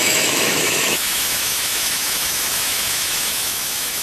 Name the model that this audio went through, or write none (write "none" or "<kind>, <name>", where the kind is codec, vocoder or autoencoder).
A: autoencoder, DAC-VAE